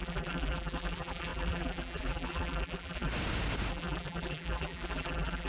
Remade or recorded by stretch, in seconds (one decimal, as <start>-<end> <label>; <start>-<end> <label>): 0.0-3.1 remade; 3.1-3.7 recorded; 3.7-5.5 remade